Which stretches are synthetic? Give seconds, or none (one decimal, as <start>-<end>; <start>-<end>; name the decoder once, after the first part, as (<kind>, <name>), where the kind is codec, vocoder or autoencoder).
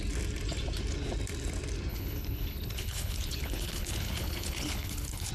1.9-5.3 (codec, HILCodec)